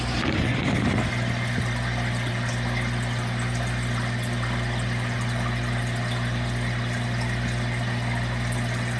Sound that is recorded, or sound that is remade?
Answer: recorded